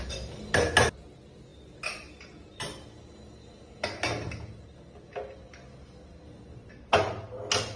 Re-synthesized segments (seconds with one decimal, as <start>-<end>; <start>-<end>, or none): none